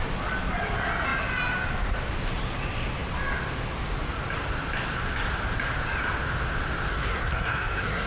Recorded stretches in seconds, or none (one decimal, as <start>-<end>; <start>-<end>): 0.0-6.9